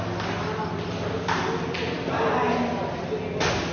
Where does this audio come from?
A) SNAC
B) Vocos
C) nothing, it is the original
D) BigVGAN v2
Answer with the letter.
C